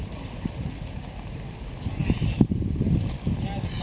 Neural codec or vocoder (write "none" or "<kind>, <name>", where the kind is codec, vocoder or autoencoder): none